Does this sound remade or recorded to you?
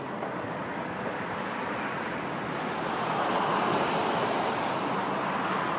recorded